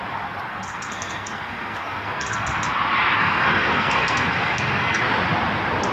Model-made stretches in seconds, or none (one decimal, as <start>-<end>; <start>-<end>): 0.5-2.7; 3.2-5.0